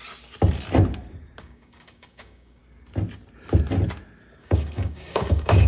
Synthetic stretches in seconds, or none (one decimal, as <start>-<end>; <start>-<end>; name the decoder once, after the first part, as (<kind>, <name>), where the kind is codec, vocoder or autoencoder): 1.4-2.6 (codec, DAC); 4.4-5.7

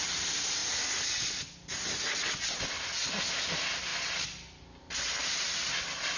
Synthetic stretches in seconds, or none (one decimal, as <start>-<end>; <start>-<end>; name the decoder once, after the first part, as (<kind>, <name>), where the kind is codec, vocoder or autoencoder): none